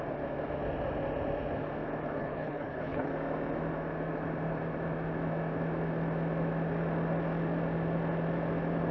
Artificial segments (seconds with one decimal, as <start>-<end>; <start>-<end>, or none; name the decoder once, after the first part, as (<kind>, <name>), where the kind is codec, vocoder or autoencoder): 2.2-3.1 (codec, HILCodec)